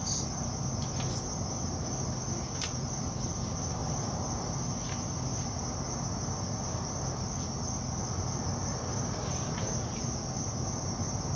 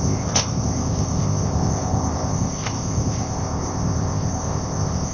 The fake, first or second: second